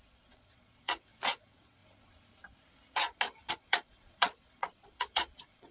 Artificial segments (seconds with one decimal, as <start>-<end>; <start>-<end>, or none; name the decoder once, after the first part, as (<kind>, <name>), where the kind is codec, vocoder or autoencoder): 0.0-1.8 (vocoder, Vocos); 3.5-5.7